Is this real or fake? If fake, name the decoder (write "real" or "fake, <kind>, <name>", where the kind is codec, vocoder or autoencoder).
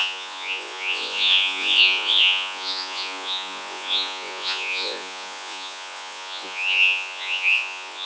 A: fake, vocoder, Vocos